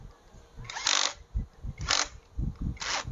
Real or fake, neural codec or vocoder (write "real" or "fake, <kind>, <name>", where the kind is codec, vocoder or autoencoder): real